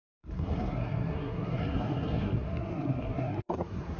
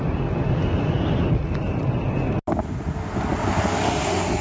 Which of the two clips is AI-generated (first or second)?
first